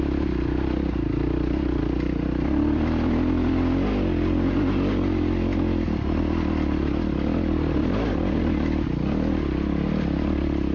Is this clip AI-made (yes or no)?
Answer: no